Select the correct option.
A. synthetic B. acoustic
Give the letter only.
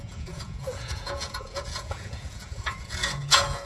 A